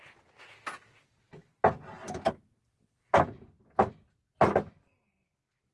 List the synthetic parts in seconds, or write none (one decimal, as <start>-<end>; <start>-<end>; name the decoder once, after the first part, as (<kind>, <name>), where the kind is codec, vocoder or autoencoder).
none